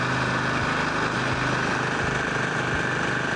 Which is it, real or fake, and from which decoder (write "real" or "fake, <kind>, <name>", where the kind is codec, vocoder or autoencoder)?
real